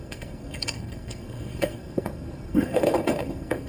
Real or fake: fake